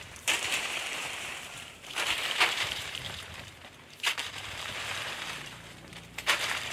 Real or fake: fake